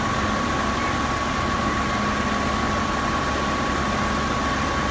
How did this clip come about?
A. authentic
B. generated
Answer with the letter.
A